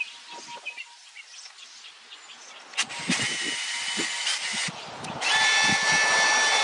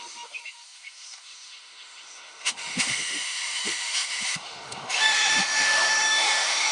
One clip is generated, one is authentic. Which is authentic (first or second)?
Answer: first